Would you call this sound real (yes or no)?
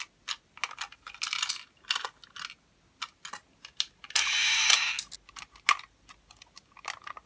yes